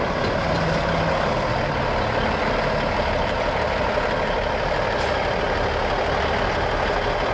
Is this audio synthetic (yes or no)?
no